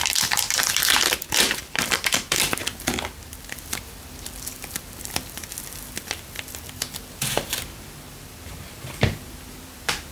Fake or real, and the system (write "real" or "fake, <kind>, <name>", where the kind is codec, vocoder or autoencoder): fake, vocoder, BigVGAN v2